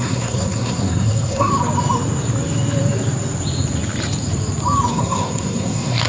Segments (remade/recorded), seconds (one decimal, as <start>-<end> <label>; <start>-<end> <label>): 0.0-1.5 remade; 1.5-4.9 recorded; 4.9-6.1 remade